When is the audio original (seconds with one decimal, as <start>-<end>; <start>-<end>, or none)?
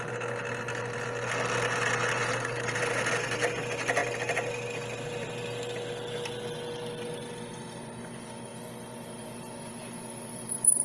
0.0-2.2; 3.1-10.8